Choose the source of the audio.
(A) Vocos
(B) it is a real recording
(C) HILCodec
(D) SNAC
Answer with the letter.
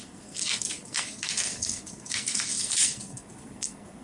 D